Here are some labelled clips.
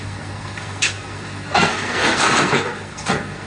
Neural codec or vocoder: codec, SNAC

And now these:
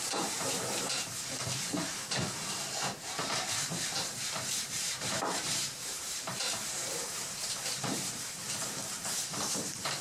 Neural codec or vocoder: vocoder, BigVGAN v2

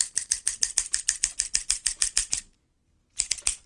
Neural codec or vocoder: none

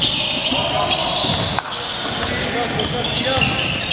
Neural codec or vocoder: none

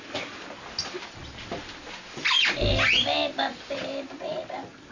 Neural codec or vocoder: none